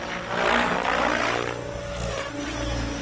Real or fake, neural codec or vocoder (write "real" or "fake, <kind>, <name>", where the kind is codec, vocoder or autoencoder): real